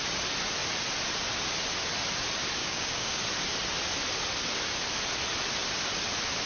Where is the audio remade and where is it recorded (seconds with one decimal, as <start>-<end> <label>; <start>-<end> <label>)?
0.0-2.6 recorded; 2.6-3.2 remade; 3.2-6.5 recorded